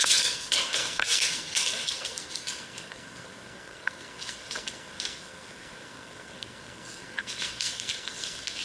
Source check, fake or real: fake